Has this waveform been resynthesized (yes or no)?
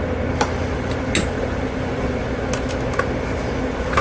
no